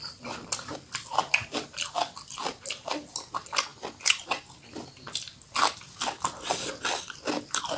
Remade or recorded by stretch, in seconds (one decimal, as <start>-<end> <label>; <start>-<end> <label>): 0.0-7.8 recorded